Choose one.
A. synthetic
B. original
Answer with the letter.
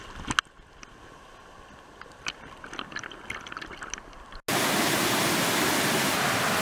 B